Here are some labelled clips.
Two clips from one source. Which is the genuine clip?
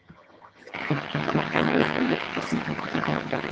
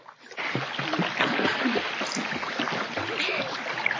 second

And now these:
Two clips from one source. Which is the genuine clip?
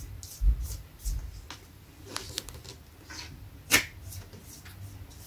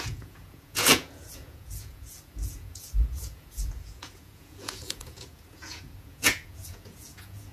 first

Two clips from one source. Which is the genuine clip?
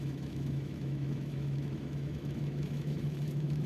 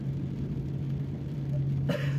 second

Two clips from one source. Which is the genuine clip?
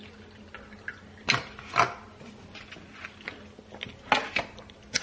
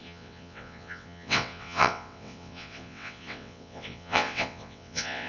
first